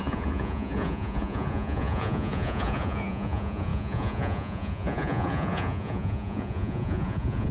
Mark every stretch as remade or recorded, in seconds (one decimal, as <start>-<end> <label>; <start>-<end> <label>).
0.0-7.5 remade